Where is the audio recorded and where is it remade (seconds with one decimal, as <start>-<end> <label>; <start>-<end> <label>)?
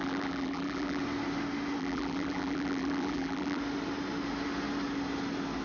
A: 0.0-1.0 remade; 1.0-1.8 recorded; 1.8-3.6 remade; 3.6-5.6 recorded